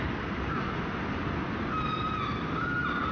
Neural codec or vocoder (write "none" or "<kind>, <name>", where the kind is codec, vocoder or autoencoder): none